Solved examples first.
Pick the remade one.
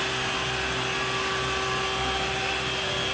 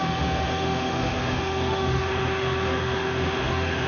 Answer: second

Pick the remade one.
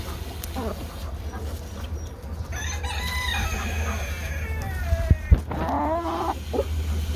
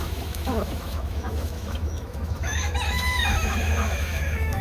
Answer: second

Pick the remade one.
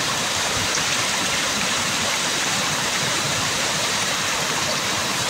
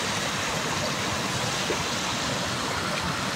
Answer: first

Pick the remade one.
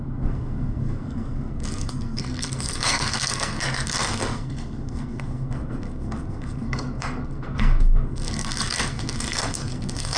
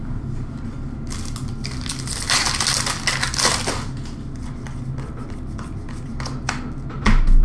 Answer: first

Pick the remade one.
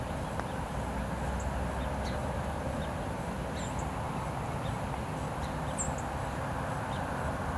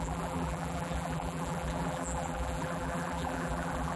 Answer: second